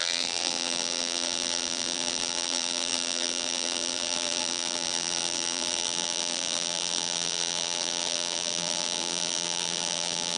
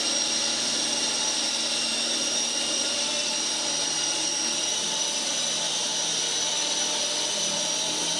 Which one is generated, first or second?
first